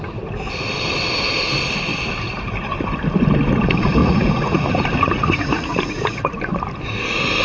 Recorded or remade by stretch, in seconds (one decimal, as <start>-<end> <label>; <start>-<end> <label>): 0.0-4.0 recorded; 4.0-6.4 remade; 6.4-7.4 recorded